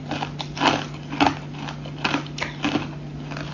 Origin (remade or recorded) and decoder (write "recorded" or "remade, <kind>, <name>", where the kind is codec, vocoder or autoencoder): recorded